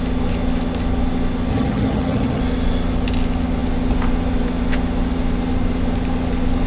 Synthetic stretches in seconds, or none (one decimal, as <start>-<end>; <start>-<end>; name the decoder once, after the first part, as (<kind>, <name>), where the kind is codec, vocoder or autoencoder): 1.5-2.4 (vocoder, HiFi-GAN)